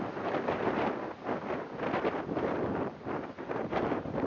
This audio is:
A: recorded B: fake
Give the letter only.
A